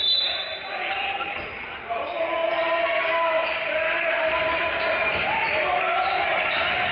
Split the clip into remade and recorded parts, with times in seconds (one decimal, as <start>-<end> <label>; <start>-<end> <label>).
0.0-6.9 recorded